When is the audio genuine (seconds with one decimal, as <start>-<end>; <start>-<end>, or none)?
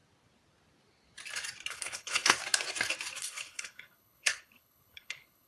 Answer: 0.0-1.7; 2.4-3.2